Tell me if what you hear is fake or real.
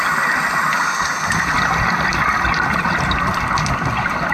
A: real